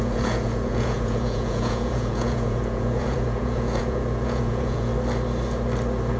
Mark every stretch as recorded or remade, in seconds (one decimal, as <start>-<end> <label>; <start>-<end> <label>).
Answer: 0.0-4.9 remade; 4.9-6.2 recorded